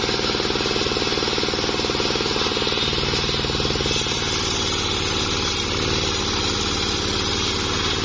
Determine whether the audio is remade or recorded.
recorded